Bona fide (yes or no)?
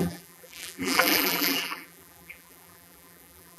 no